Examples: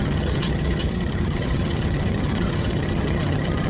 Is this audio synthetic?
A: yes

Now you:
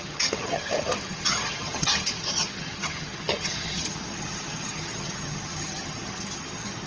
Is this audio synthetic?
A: yes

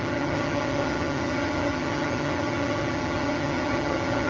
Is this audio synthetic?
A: yes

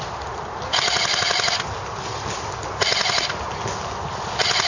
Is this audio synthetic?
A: no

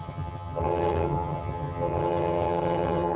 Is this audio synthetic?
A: yes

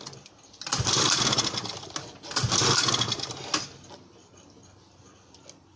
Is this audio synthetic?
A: no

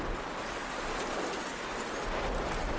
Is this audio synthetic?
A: no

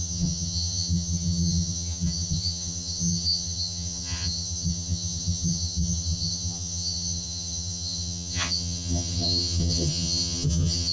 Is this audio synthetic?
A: yes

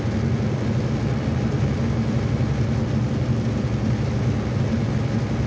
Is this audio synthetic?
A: no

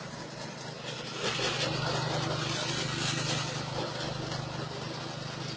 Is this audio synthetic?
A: no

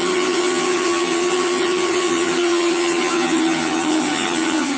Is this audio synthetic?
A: yes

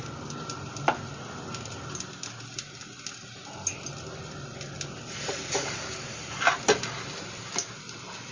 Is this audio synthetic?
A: no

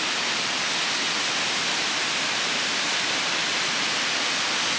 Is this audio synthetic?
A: no